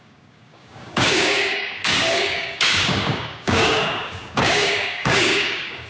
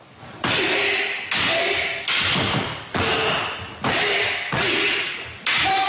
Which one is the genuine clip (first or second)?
second